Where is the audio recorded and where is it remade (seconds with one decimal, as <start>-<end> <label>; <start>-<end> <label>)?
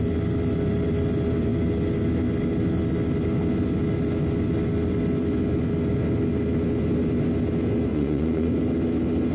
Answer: 0.0-7.9 recorded; 7.9-8.5 remade; 8.5-9.3 recorded